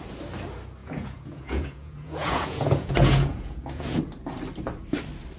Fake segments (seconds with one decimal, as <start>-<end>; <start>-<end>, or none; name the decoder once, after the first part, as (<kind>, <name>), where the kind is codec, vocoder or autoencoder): 0.8-4.0 (vocoder, Vocos)